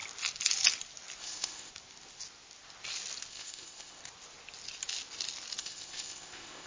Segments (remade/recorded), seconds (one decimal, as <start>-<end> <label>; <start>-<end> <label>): 0.0-1.2 recorded; 1.2-1.7 remade; 1.7-3.3 recorded; 3.3-4.0 remade; 4.0-5.6 recorded; 5.6-6.7 remade